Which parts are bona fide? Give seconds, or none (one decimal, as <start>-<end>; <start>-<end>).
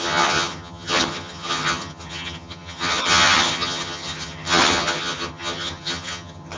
none